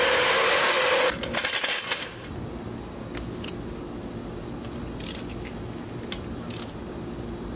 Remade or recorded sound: recorded